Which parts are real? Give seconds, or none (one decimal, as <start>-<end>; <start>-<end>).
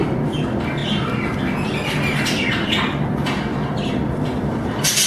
0.0-5.1